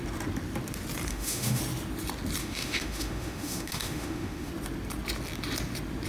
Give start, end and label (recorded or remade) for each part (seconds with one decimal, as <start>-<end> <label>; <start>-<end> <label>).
0.0-1.1 recorded; 1.1-1.6 remade; 1.6-2.4 recorded; 2.4-4.5 remade; 4.5-6.1 recorded